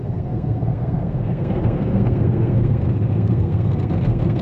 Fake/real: fake